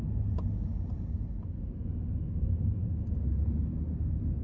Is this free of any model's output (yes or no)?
yes